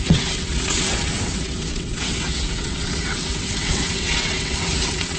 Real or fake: fake